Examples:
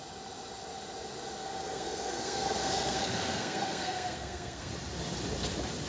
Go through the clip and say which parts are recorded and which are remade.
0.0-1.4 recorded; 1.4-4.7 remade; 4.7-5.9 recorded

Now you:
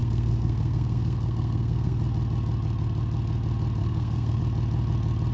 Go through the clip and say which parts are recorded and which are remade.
0.0-2.0 remade; 2.0-3.8 recorded; 3.8-4.4 remade; 4.4-5.3 recorded

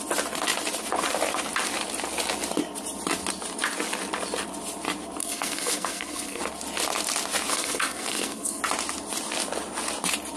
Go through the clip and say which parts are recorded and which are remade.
0.0-5.2 recorded; 5.2-6.4 remade; 6.4-7.5 recorded; 7.5-8.6 remade; 8.6-10.4 recorded

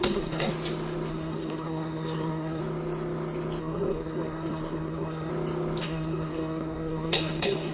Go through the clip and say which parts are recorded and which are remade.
0.0-0.5 remade; 0.5-1.1 recorded; 1.1-2.6 remade; 2.6-3.6 recorded; 3.6-5.3 remade; 5.3-5.8 recorded; 5.8-7.7 remade

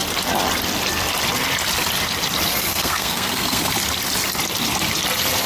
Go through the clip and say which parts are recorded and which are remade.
0.0-2.5 recorded; 2.5-3.7 remade; 3.7-5.5 recorded

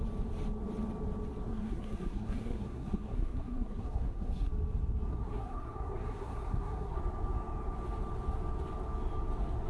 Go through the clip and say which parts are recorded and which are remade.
0.0-1.5 recorded; 1.5-4.5 remade; 4.5-5.1 recorded; 5.1-7.0 remade; 7.0-9.7 recorded

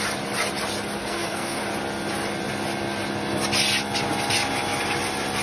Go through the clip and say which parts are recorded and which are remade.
0.0-1.0 recorded; 1.0-1.6 remade; 1.6-5.4 recorded